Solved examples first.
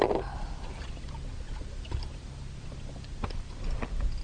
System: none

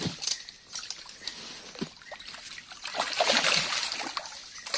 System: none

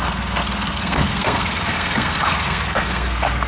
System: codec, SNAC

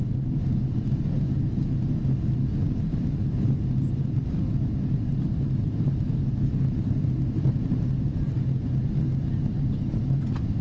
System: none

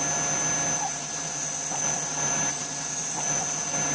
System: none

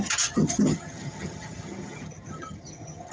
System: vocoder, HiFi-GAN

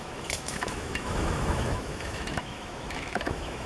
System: autoencoder, DAC-VAE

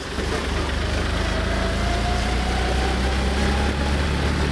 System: none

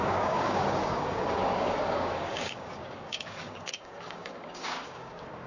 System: codec, DAC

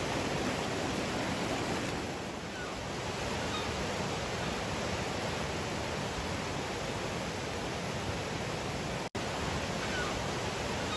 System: none